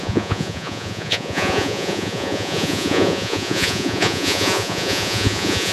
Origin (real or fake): fake